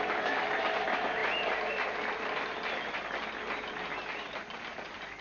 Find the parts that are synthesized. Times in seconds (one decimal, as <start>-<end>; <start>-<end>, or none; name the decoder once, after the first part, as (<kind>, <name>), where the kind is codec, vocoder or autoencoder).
none